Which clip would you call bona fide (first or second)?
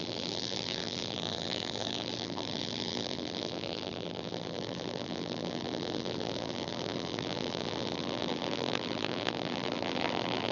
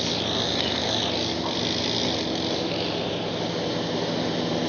second